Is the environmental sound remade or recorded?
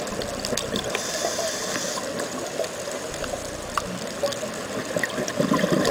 recorded